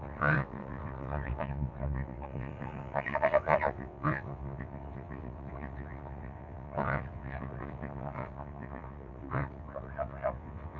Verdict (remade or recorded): remade